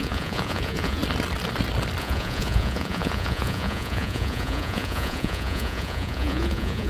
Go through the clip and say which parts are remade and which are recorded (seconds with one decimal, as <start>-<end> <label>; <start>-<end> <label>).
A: 0.0-1.0 remade; 1.0-2.0 recorded; 2.0-6.9 remade